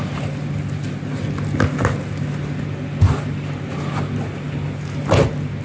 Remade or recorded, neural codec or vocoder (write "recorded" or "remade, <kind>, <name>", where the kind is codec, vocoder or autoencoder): recorded